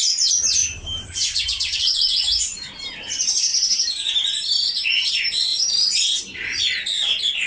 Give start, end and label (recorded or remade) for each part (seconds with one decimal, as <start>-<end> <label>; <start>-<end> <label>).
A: 0.0-0.6 recorded; 0.6-1.8 remade; 1.8-3.5 recorded; 3.5-5.1 remade; 5.1-5.5 recorded; 5.5-6.2 remade; 6.2-7.5 recorded